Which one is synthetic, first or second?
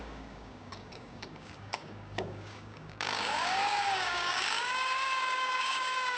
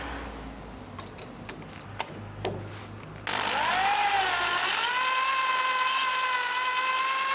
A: first